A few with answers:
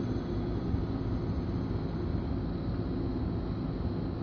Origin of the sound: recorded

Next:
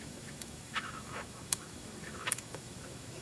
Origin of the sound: remade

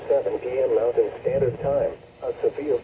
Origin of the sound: recorded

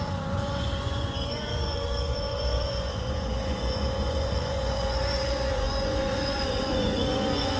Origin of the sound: remade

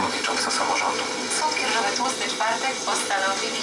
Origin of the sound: recorded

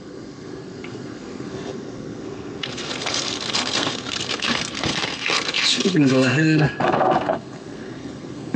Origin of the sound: remade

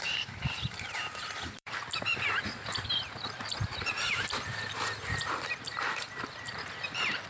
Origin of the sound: remade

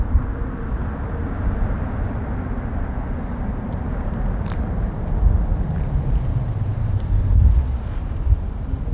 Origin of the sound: recorded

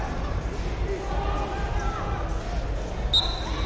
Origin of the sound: recorded